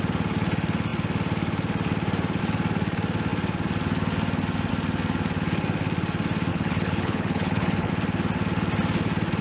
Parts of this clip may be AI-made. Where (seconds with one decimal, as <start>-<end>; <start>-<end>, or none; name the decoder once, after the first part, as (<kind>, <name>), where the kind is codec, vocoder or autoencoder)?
6.5-7.9 (codec, HILCodec)